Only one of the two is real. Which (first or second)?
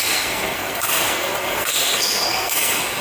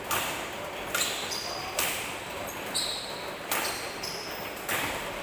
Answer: second